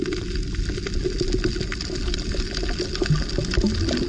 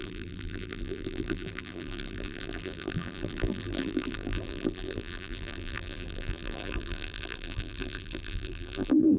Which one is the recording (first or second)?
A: first